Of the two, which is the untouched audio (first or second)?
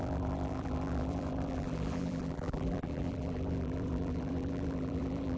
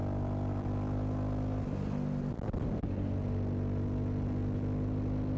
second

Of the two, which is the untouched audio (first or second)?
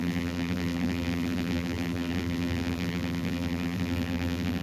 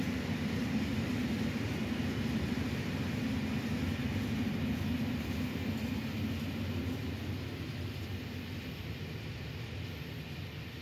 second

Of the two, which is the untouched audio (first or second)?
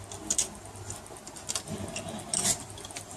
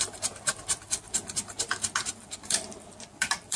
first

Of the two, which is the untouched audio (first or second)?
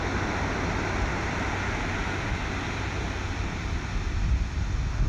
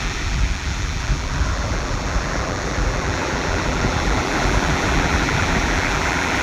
first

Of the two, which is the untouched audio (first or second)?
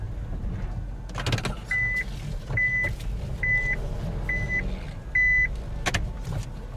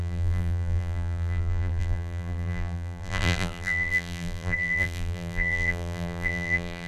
first